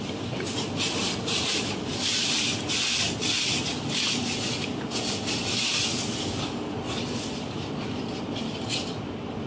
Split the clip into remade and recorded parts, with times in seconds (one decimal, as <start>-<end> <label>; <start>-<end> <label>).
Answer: 0.0-4.7 recorded; 4.7-5.3 remade; 5.3-9.5 recorded